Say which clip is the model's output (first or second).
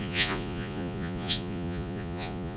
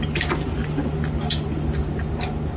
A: first